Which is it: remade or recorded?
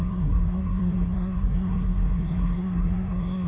remade